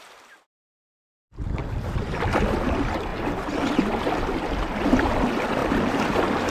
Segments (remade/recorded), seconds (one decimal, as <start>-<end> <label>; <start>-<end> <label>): 0.0-6.5 recorded